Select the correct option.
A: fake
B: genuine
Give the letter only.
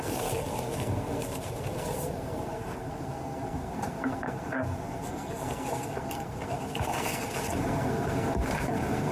A